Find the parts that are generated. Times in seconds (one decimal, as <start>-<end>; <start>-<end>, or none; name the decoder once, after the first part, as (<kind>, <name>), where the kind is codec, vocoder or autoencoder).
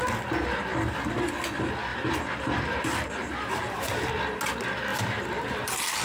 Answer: 1.9-4.1 (vocoder, BigVGAN v2); 4.9-6.0